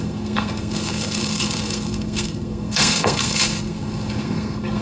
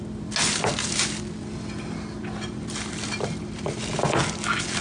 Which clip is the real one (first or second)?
second